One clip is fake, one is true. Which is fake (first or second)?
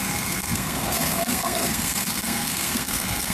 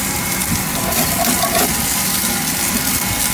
first